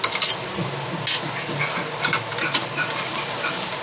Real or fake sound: real